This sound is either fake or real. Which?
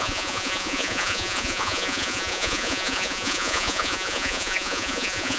fake